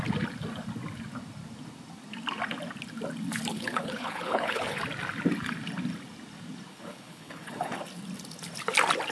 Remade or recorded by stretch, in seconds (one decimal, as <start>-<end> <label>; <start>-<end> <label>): 0.0-3.5 recorded; 3.5-4.8 remade; 4.8-6.7 recorded; 6.7-7.8 remade; 7.8-9.1 recorded